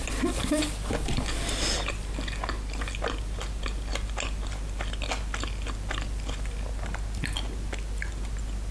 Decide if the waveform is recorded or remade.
recorded